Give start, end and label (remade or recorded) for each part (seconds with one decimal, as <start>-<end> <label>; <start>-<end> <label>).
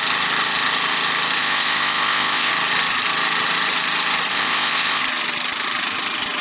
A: 0.0-1.4 recorded; 1.4-2.5 remade; 2.5-4.3 recorded; 4.3-5.0 remade; 5.0-6.4 recorded